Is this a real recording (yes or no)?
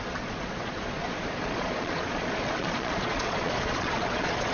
no